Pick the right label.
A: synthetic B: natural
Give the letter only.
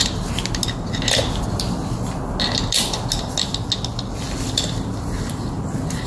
B